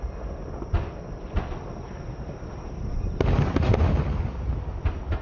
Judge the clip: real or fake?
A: real